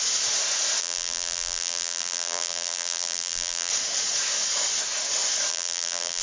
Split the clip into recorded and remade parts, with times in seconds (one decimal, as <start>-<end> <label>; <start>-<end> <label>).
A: 0.0-0.8 recorded; 0.8-3.7 remade; 3.7-5.5 recorded; 5.5-6.2 remade